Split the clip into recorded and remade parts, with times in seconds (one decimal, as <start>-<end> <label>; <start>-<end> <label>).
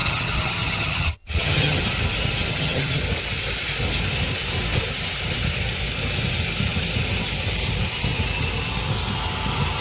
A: 0.0-1.8 remade; 1.8-2.5 recorded; 2.5-3.0 remade; 3.0-9.8 recorded